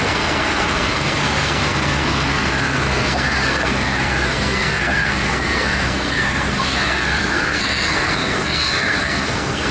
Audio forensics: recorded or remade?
remade